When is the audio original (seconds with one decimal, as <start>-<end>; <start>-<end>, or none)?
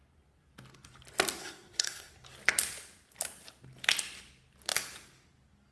0.0-1.4; 2.1-5.7